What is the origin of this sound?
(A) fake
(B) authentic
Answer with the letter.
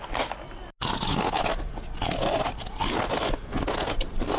B